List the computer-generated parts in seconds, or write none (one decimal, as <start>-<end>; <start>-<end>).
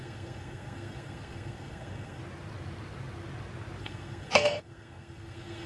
0.0-2.2; 3.8-5.7